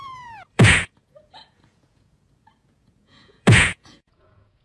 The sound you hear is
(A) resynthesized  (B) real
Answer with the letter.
A